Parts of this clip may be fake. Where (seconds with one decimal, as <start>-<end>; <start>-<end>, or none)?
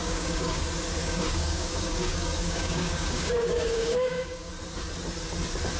0.0-0.6; 1.0-4.5